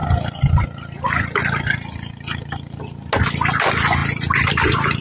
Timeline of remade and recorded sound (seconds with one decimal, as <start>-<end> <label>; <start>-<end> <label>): 0.0-5.0 recorded